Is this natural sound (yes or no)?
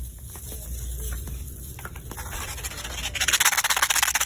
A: yes